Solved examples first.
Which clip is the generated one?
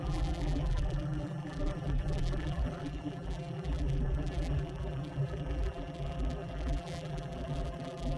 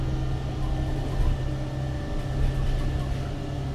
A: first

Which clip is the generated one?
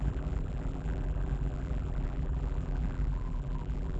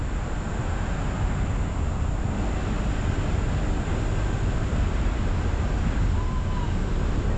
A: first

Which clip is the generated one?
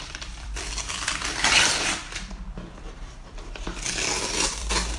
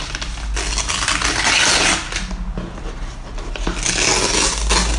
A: first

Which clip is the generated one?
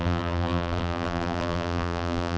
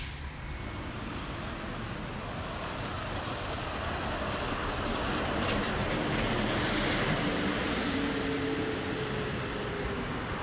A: first